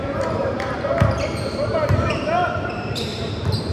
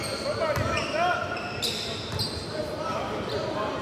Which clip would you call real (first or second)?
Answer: second